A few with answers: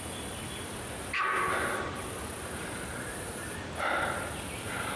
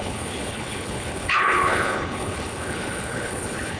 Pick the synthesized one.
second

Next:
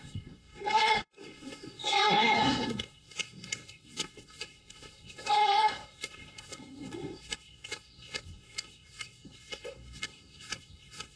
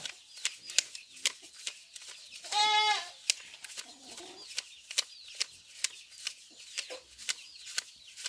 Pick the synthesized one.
first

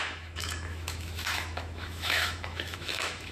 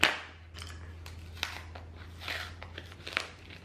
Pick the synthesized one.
first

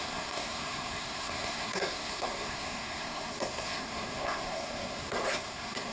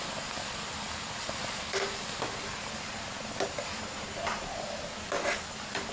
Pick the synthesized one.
first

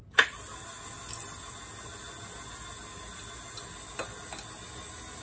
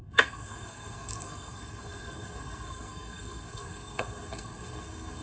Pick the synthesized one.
second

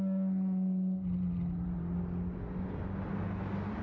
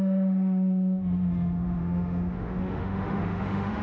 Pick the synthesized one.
second